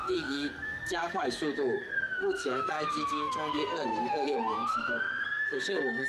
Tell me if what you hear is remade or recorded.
remade